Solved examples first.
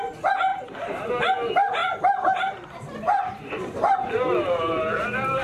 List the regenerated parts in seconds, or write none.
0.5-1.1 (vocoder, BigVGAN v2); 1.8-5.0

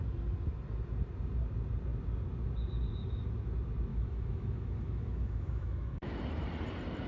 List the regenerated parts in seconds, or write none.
3.9-6.1 (autoencoder, DAC-VAE)

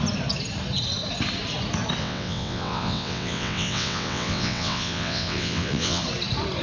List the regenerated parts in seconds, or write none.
2.0-6.0 (vocoder, WaveNeXt)

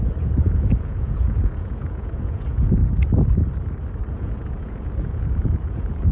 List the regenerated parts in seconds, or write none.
0.0-2.8 (vocoder, Vocos); 4.1-6.1

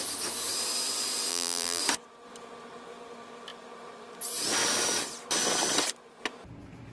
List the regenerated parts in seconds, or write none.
1.3-1.8 (vocoder, BigVGAN v2)